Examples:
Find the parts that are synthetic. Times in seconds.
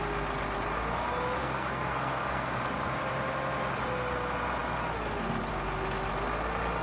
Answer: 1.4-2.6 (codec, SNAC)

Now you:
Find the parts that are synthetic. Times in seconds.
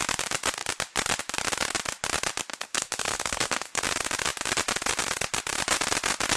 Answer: 2.7-3.8 (codec, SNAC)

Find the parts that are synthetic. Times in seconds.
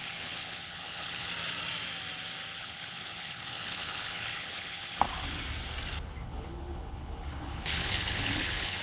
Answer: 0.0-1.3 (codec, HILCodec); 2.6-5.0; 6.2-8.8